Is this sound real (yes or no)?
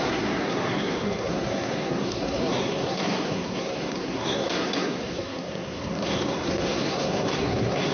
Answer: no